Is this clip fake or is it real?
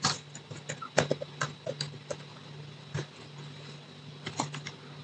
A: real